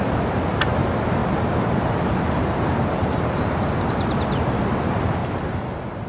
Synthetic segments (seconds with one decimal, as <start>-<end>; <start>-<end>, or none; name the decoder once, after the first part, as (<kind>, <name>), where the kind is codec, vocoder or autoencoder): 1.2-4.6 (vocoder, BigVGAN v2); 5.2-6.1